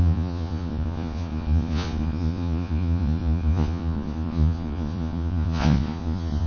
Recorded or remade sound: remade